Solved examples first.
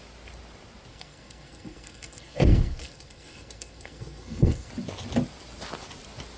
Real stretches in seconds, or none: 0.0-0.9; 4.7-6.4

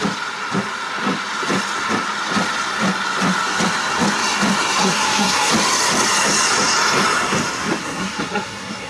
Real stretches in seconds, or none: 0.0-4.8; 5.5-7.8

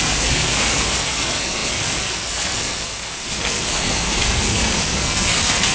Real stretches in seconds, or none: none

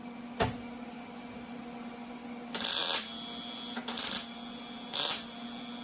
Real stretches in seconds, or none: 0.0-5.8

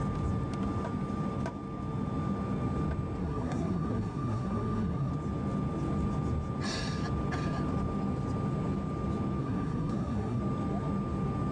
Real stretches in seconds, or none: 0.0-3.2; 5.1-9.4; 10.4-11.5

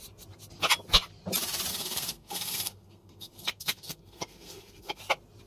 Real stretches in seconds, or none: 0.0-1.7; 5.0-5.5